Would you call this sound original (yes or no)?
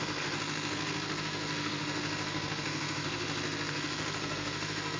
no